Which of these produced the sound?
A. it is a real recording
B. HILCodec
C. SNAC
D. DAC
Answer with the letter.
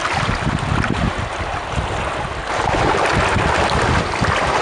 A